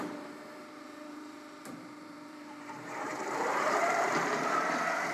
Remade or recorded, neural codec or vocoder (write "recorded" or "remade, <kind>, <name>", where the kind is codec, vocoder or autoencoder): remade, vocoder, BigVGAN v2